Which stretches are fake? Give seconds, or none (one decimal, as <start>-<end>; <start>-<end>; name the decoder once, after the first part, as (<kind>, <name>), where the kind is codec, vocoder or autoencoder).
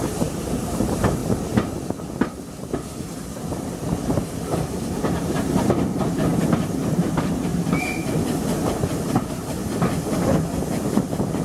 0.0-1.2 (vocoder, BigVGAN v2); 4.3-7.5; 9.1-9.6